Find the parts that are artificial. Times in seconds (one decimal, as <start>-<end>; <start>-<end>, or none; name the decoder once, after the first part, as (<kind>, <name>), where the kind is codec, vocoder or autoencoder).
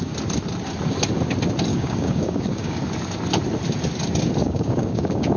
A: 1.7-2.8 (codec, DAC); 4.4-5.4